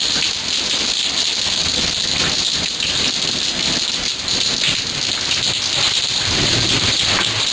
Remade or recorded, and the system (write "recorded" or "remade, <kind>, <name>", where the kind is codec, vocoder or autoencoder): recorded